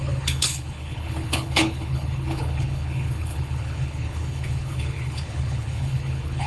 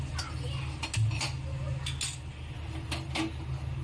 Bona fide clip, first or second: second